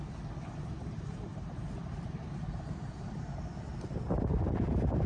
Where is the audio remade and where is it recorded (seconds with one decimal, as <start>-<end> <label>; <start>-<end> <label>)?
0.0-0.8 recorded; 0.8-3.4 remade; 3.4-5.1 recorded